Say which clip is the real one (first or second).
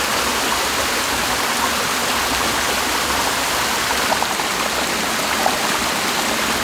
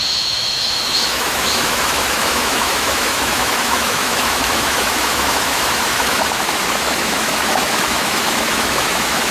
first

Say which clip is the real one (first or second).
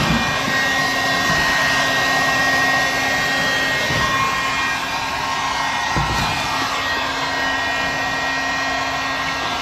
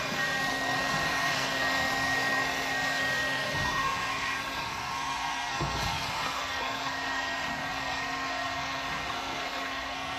first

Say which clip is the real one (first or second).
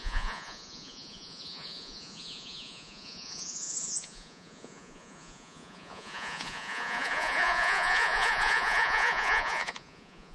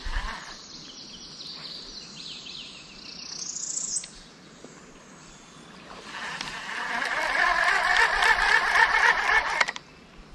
second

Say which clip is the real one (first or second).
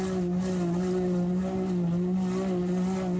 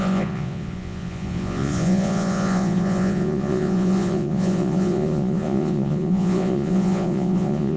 first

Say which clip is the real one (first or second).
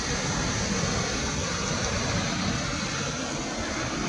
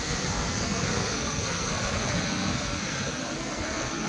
first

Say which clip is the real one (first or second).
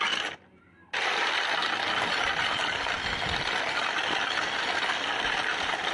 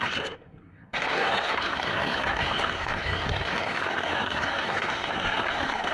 first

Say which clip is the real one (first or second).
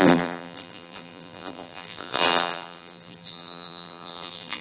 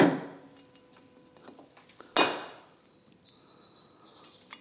second